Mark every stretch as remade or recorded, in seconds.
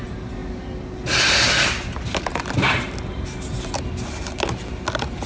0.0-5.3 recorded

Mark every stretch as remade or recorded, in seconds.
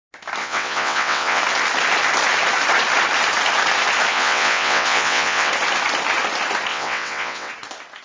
0.0-0.4 recorded; 0.4-1.4 remade; 1.4-4.1 recorded; 4.1-5.5 remade; 5.5-6.7 recorded; 6.7-7.5 remade; 7.5-8.0 recorded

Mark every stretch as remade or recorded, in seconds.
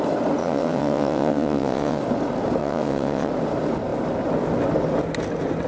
0.0-0.4 recorded; 0.4-2.0 remade; 2.0-2.6 recorded; 2.6-3.3 remade; 3.3-5.7 recorded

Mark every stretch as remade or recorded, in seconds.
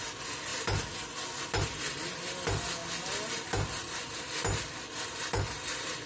0.0-6.1 recorded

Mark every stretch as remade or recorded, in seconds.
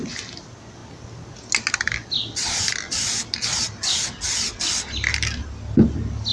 0.0-6.3 recorded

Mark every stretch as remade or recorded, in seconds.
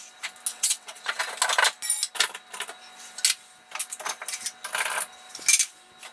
0.0-0.5 recorded; 0.5-1.2 remade; 1.2-6.1 recorded